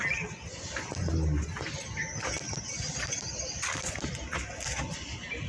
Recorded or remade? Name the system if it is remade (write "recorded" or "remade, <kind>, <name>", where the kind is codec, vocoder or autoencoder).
recorded